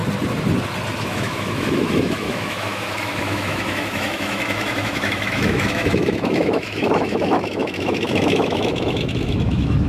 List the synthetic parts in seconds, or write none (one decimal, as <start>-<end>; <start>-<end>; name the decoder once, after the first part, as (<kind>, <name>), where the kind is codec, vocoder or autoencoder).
1.0-9.9 (autoencoder, DAC-VAE)